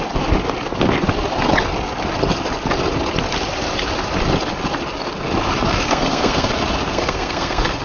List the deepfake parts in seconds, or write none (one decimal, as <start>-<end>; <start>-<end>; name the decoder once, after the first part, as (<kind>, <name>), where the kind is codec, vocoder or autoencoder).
5.7-6.5 (codec, SNAC); 6.9-7.8